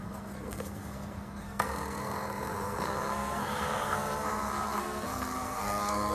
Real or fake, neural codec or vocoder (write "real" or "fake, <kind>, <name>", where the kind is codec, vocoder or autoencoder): fake, codec, SNAC